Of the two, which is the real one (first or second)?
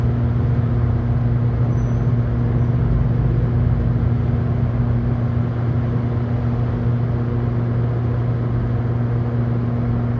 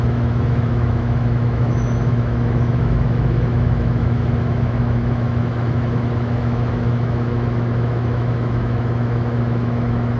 first